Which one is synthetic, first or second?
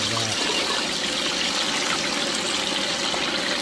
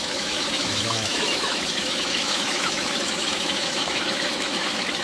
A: second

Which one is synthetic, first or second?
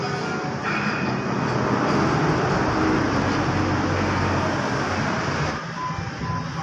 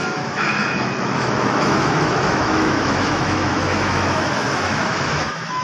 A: second